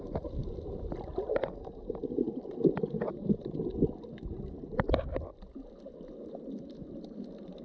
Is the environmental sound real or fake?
real